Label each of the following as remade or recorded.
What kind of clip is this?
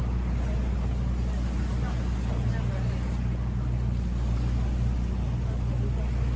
recorded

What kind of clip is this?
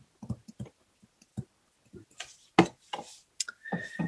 recorded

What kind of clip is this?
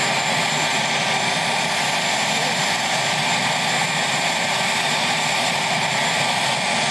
recorded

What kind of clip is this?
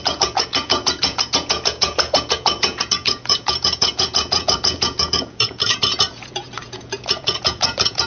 remade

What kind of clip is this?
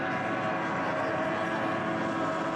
recorded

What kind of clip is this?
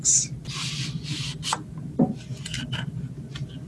recorded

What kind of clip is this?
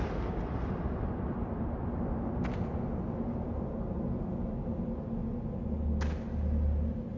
recorded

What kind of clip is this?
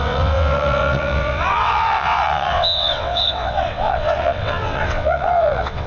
remade